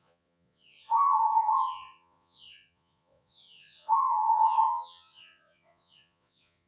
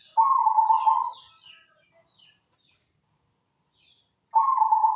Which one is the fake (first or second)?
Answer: first